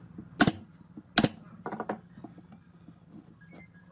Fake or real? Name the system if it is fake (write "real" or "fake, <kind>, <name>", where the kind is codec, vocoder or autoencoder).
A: real